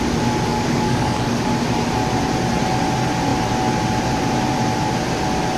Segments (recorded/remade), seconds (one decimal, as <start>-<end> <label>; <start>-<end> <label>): 0.0-0.5 recorded; 0.5-1.5 remade; 1.5-5.6 recorded